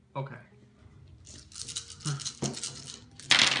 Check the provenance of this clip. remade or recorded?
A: recorded